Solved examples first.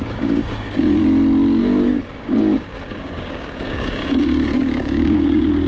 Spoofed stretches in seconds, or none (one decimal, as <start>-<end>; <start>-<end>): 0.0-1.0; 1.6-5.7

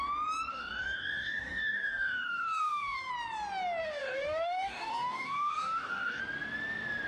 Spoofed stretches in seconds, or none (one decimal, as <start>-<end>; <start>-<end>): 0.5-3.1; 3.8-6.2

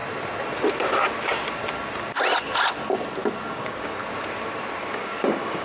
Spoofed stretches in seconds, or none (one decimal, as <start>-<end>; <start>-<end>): 3.4-4.0; 4.8-5.6

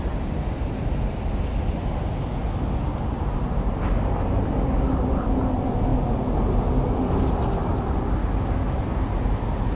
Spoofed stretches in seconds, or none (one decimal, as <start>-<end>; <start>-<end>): 8.2-8.8